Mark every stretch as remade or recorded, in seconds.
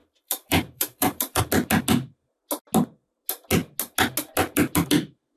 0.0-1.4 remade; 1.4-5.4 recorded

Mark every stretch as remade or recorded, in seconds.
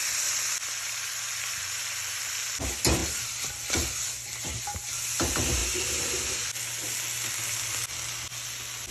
0.0-8.9 recorded